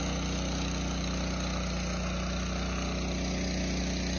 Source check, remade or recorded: recorded